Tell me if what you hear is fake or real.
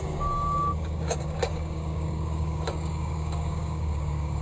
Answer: fake